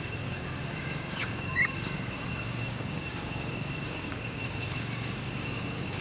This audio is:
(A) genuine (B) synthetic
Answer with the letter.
B